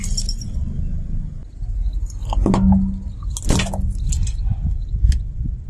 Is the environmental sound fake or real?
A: real